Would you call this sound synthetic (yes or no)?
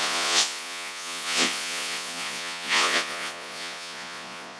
yes